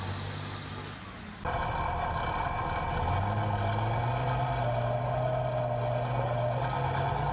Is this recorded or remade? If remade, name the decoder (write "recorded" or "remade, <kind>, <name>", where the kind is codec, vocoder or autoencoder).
recorded